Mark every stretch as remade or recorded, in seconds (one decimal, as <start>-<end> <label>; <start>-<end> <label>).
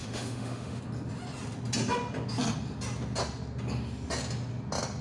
0.0-0.8 remade; 0.8-5.0 recorded